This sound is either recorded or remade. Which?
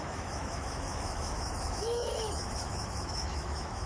remade